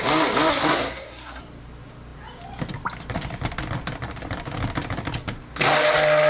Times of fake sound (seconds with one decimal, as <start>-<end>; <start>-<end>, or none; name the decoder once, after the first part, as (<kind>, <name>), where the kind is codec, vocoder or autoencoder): 0.5-1.4 (codec, SNAC)